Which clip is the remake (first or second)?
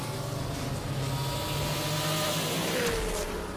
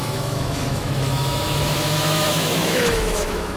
second